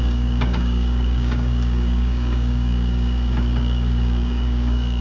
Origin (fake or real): fake